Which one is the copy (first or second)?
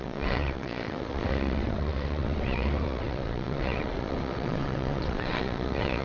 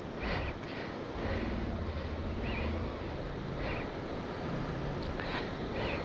first